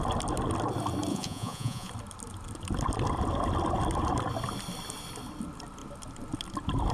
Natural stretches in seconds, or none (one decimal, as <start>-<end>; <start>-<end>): 0.0-1.1; 1.9-6.9